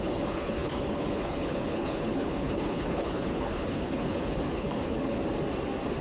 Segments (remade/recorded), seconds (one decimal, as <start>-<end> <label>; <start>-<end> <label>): 0.0-5.2 remade; 5.2-6.0 recorded